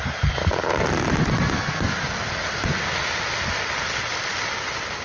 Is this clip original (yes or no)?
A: yes